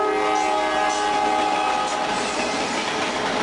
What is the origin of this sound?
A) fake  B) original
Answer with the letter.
B